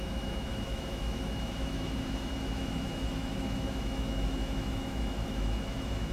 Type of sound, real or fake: fake